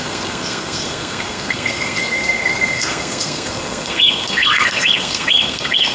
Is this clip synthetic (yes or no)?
yes